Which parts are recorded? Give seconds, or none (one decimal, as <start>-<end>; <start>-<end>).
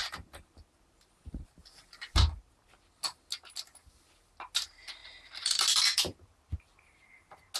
0.0-1.6; 2.5-5.0; 6.6-7.6